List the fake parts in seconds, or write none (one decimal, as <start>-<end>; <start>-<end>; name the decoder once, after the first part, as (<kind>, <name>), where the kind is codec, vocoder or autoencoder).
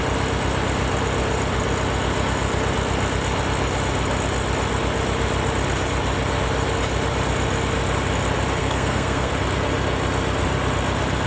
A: 8.6-9.3 (codec, SNAC)